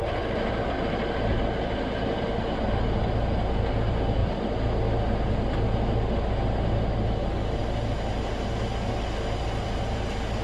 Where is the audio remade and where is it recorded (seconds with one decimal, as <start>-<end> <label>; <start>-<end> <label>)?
0.0-10.4 recorded